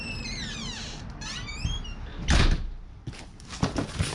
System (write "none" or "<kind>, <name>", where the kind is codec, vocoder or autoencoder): none